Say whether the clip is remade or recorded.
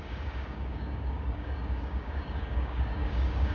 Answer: remade